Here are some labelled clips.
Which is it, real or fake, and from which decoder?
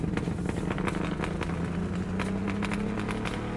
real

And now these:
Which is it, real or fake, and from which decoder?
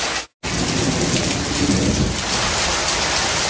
real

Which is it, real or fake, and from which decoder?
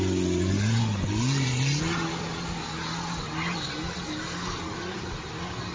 real